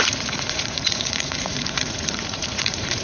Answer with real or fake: fake